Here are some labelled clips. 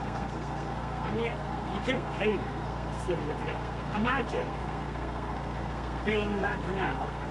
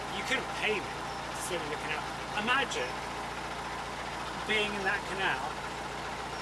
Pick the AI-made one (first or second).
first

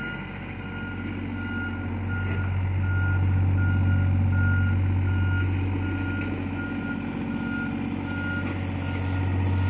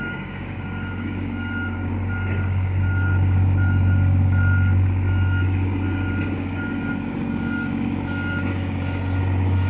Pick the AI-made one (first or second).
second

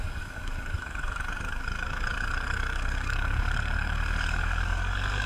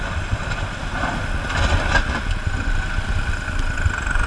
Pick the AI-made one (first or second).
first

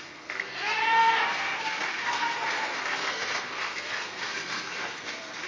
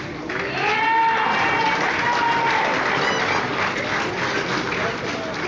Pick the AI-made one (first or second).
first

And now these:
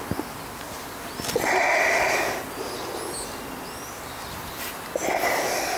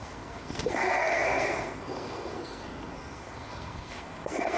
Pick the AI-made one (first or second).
second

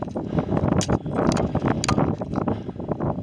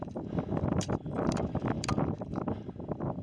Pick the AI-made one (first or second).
second